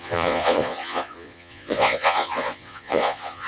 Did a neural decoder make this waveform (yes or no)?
yes